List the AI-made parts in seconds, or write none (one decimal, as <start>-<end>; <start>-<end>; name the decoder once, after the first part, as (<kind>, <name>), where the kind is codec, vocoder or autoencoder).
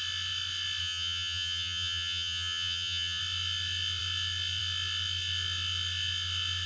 0.8-3.2 (vocoder, HiFi-GAN)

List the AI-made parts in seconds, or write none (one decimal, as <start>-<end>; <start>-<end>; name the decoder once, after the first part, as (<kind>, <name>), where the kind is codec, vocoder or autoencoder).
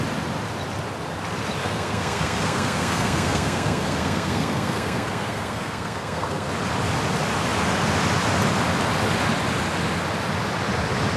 1.6-6.5 (codec, SNAC)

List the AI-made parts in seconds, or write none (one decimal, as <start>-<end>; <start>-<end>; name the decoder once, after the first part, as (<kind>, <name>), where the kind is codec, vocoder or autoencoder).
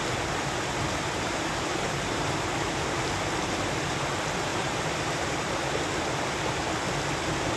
1.7-2.2 (vocoder, BigVGAN v2); 4.5-5.8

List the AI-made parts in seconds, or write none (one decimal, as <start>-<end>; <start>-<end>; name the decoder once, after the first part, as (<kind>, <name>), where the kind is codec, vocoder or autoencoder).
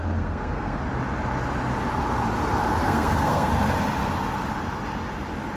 0.0-0.8 (codec, SNAC); 2.8-3.5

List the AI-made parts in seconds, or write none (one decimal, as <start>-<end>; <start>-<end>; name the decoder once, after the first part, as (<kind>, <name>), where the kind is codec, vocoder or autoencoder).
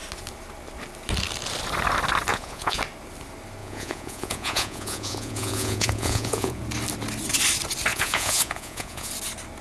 2.3-2.8 (vocoder, Vocos); 3.6-6.6; 7.9-9.1